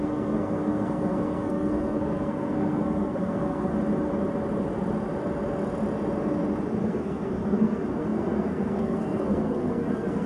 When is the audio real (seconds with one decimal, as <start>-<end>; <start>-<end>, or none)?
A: 3.7-6.8